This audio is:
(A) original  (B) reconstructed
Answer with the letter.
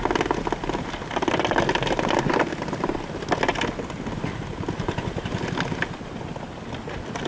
A